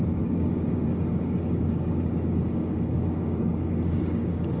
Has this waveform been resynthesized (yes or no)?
yes